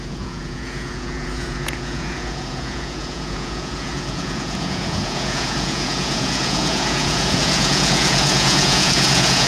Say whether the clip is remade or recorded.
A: remade